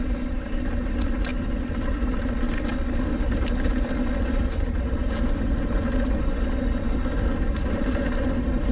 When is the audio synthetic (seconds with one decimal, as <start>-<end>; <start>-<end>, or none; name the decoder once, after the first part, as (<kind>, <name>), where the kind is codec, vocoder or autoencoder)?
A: none